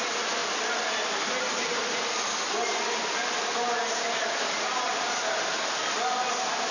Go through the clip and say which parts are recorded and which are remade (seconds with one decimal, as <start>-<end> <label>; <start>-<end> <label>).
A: 0.0-6.7 recorded